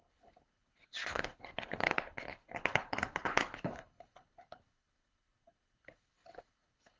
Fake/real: fake